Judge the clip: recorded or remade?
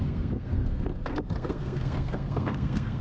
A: remade